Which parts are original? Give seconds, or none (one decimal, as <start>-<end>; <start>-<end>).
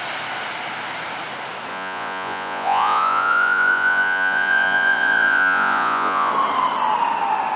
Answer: 0.0-1.7; 6.3-7.6